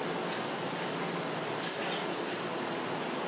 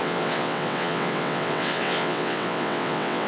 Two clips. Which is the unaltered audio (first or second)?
first